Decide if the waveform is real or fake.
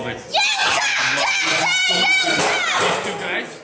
real